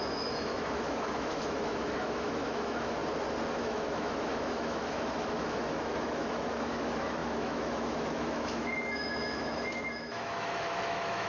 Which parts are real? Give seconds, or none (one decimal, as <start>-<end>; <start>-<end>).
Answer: 3.0-3.6